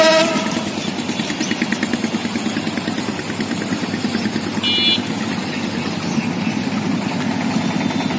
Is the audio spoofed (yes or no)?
no